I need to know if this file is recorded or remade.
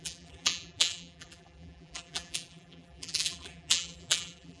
remade